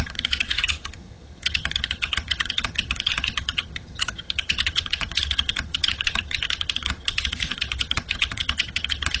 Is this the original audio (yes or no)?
no